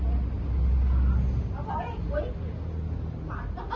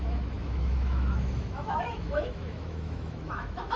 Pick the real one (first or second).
first